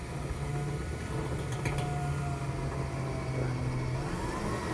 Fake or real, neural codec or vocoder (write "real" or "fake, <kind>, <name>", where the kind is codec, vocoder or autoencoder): real